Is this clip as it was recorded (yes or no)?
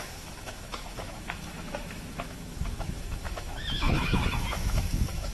no